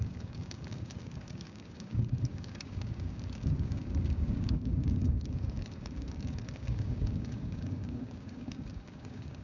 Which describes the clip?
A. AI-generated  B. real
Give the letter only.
A